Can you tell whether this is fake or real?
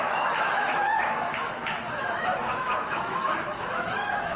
fake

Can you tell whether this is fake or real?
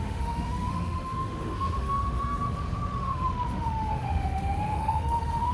fake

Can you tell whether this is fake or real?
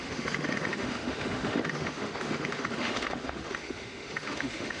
fake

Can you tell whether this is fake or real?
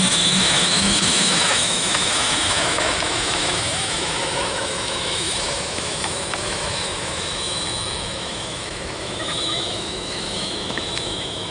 fake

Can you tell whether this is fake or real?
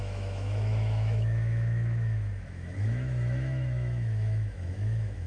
fake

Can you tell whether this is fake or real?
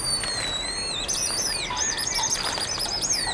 real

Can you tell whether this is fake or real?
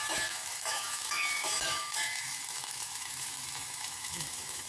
fake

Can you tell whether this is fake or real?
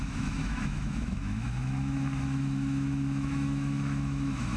fake